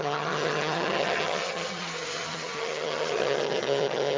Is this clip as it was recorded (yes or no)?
no